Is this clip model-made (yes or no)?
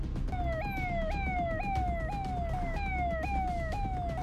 no